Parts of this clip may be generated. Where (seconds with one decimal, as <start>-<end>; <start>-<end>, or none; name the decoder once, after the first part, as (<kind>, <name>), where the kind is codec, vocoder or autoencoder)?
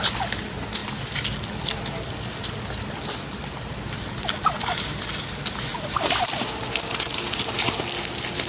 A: 5.7-6.2 (vocoder, BigVGAN v2)